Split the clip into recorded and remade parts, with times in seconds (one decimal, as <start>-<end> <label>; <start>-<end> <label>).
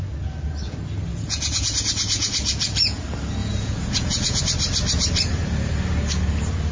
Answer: 0.0-1.1 recorded; 1.1-3.0 remade; 3.0-3.4 recorded; 3.4-4.4 remade; 4.4-6.7 recorded